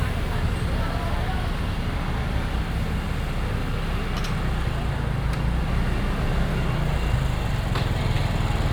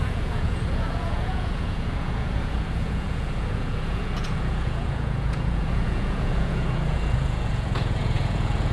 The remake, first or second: second